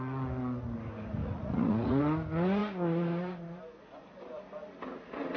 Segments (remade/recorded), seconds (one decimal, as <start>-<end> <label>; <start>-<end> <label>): 0.0-1.2 recorded; 1.2-2.0 remade; 2.0-5.4 recorded